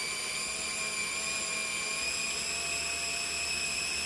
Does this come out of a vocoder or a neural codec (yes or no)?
no